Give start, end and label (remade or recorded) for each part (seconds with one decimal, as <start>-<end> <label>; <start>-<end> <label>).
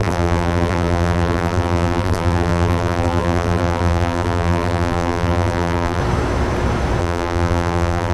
0.0-6.0 remade; 6.0-7.0 recorded; 7.0-8.1 remade